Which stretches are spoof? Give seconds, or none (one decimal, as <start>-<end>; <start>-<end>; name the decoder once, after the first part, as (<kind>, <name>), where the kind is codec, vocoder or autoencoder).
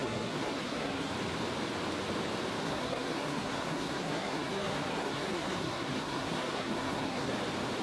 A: 0.0-1.1 (codec, SNAC); 2.6-7.3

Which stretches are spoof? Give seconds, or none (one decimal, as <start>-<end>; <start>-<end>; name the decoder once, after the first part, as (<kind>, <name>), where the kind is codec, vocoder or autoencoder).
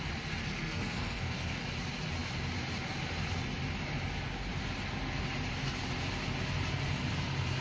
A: 0.4-1.6 (codec, SNAC)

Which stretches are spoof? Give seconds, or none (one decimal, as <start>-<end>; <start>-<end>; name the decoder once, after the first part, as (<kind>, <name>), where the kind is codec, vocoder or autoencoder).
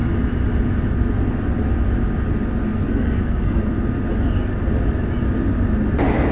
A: 2.7-3.6 (codec, SNAC)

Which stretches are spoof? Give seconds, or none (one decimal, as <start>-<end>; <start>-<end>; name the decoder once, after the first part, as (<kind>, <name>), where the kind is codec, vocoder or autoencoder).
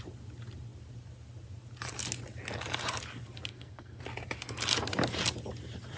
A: 3.5-4.0 (codec, SNAC)